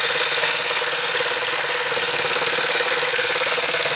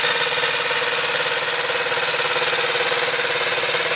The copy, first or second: first